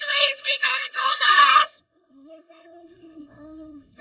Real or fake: fake